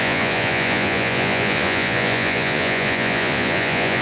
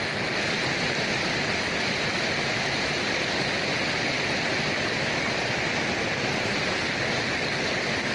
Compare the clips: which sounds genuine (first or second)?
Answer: second